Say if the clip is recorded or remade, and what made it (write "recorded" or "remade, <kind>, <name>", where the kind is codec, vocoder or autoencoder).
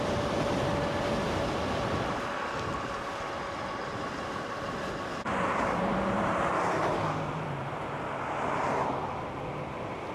recorded